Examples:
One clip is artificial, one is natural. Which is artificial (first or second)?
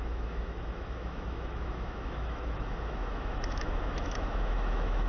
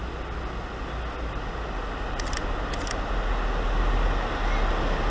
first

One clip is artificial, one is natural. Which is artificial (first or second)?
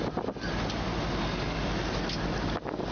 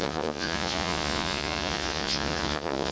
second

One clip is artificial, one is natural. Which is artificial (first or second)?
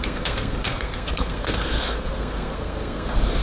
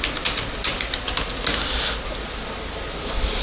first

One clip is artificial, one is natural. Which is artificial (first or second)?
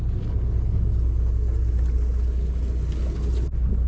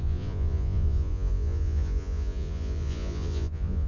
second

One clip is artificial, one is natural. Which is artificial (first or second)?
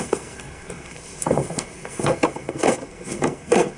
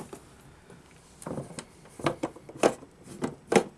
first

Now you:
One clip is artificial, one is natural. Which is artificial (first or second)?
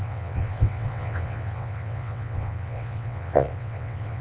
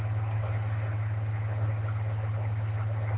first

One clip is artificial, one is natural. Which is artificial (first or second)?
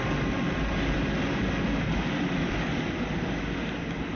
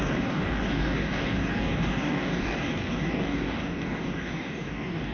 second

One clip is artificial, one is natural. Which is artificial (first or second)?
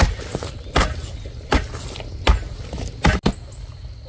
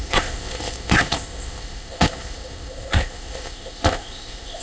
second